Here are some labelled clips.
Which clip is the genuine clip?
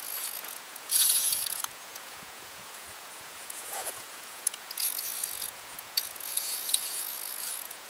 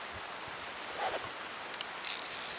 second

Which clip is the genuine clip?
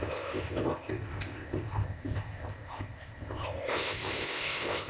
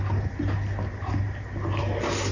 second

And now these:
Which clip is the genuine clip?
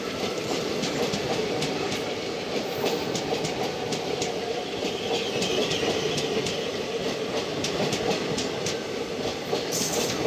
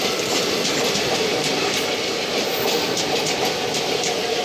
second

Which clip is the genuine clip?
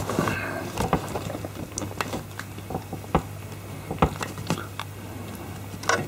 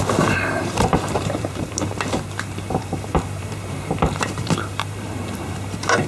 first